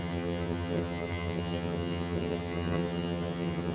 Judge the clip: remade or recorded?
remade